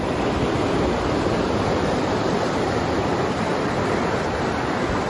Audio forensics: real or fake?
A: fake